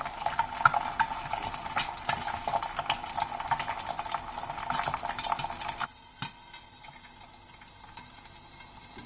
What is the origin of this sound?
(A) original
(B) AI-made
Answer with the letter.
A